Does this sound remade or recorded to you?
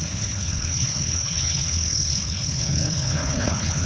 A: remade